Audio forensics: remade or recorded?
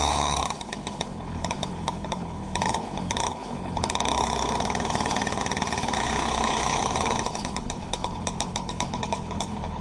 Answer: remade